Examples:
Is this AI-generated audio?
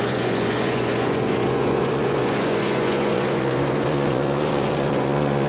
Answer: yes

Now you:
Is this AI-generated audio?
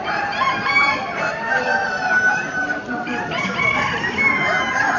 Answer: yes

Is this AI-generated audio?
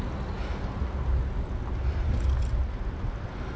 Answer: no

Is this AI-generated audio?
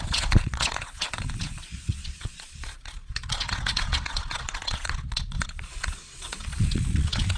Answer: yes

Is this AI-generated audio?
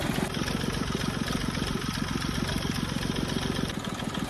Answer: yes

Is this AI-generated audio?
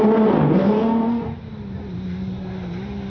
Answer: no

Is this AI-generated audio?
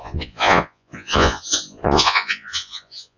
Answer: yes